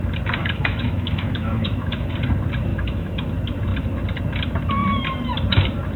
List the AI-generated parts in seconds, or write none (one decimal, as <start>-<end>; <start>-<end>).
0.4-2.1; 2.7-3.2

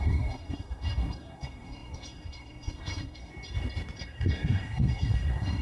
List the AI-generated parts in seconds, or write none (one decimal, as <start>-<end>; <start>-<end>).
0.0-3.3; 4.0-5.6